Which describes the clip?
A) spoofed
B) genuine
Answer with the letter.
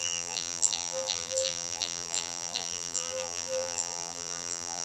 A